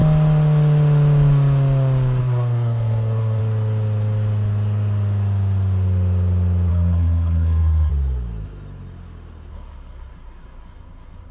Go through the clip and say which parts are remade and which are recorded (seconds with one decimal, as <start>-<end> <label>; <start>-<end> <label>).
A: 0.0-2.2 recorded; 2.2-3.4 remade; 3.4-6.7 recorded; 6.7-7.9 remade; 7.9-9.5 recorded; 9.5-11.3 remade